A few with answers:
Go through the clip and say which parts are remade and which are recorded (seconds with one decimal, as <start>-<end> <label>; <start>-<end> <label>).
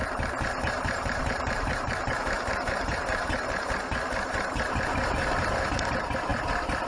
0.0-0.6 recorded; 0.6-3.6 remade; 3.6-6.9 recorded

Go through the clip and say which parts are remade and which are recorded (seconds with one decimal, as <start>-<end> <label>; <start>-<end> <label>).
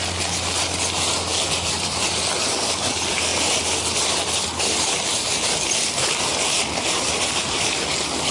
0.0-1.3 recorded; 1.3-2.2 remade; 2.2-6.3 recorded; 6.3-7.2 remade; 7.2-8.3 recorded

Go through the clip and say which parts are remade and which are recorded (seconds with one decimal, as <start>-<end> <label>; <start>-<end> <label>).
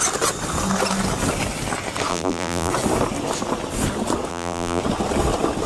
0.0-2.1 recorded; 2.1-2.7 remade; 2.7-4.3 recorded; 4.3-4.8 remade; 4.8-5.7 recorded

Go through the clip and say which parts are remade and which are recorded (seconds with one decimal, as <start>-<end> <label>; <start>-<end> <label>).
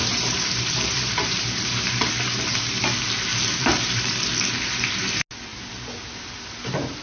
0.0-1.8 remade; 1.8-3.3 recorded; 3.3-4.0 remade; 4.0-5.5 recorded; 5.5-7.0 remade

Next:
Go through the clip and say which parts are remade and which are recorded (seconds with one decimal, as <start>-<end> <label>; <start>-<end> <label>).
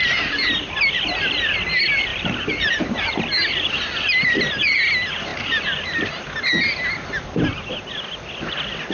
0.0-2.1 recorded; 2.1-3.1 remade; 3.1-5.3 recorded; 5.3-6.1 remade; 6.1-8.9 recorded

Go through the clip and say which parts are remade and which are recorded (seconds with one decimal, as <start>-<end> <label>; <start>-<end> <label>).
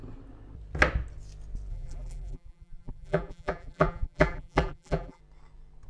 0.0-1.7 recorded; 1.7-5.2 remade; 5.2-5.9 recorded